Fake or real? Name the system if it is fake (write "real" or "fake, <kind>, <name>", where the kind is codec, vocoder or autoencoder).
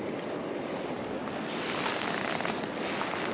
real